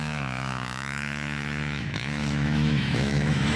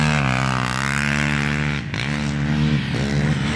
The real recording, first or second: second